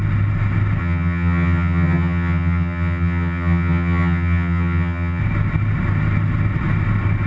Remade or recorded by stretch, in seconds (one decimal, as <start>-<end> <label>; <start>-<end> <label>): 0.0-0.8 recorded; 0.8-5.2 remade; 5.2-7.3 recorded